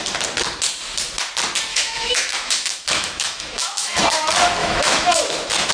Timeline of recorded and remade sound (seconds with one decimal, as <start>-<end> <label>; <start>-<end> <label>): 0.0-1.7 recorded; 1.7-4.0 remade; 4.0-4.6 recorded; 4.6-5.7 remade

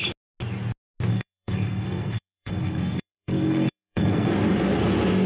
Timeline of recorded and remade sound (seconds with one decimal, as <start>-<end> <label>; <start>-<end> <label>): 0.0-1.1 recorded; 1.1-4.3 remade; 4.3-5.3 recorded

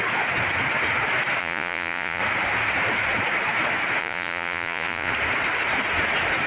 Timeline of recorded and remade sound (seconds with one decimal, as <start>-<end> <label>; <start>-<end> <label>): 0.0-1.4 recorded; 1.4-2.2 remade; 2.2-4.0 recorded; 4.0-5.1 remade; 5.1-6.5 recorded